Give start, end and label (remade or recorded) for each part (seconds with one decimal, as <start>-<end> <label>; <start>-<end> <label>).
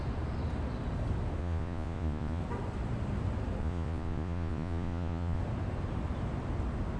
0.0-1.4 recorded; 1.4-2.4 remade; 2.4-3.6 recorded; 3.6-5.4 remade; 5.4-7.0 recorded